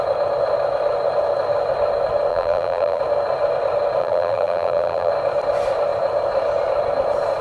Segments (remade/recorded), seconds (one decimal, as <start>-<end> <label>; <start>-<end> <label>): 0.0-2.3 recorded; 2.3-3.0 remade; 3.0-4.0 recorded; 4.0-5.1 remade; 5.1-7.4 recorded

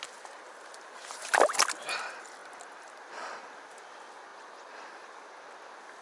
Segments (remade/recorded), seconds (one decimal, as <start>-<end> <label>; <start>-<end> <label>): 0.0-6.0 recorded

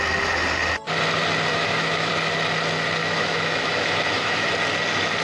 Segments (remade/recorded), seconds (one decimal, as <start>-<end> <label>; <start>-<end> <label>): 0.0-1.5 recorded; 1.5-2.1 remade; 2.1-3.0 recorded; 3.0-4.5 remade; 4.5-5.2 recorded

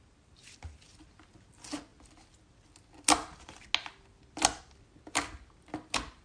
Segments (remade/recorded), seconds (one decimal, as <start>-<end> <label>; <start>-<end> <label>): 0.0-6.2 recorded

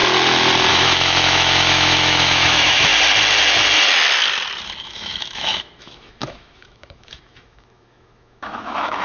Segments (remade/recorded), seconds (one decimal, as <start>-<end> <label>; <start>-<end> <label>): 0.0-0.7 recorded; 0.7-2.9 remade; 2.9-4.8 recorded; 4.8-9.0 remade

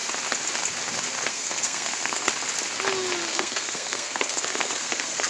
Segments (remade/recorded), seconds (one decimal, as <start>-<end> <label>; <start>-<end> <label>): 0.0-1.3 recorded; 1.3-2.3 remade; 2.3-3.3 recorded; 3.3-5.3 remade

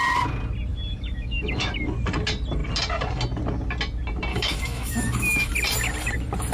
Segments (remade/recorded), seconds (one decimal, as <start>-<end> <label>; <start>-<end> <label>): 0.0-0.7 recorded; 0.7-1.7 remade; 1.7-4.3 recorded; 4.3-5.5 remade; 5.5-6.5 recorded